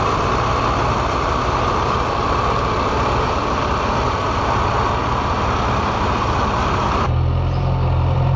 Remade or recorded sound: remade